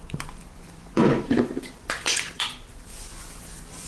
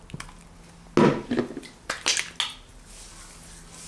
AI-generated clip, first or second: first